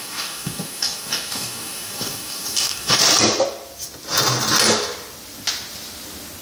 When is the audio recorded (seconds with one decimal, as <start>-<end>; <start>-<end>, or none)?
3.0-6.4